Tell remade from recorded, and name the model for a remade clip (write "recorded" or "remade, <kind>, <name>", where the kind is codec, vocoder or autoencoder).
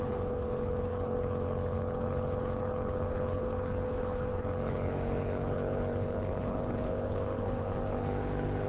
remade, codec, HILCodec